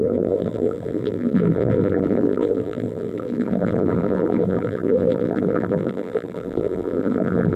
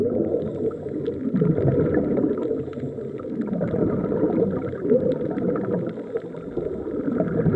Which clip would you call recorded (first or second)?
second